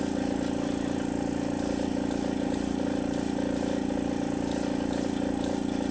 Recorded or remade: recorded